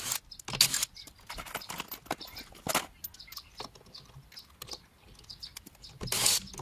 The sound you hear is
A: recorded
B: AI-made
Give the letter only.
A